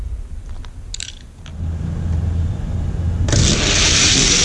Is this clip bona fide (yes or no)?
yes